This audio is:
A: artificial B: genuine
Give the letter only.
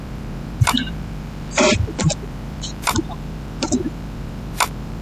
A